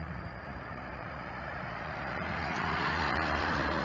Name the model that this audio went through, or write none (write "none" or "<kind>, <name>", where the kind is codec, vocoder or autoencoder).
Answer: vocoder, Vocos